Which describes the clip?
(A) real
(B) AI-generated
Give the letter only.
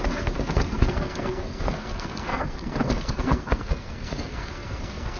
B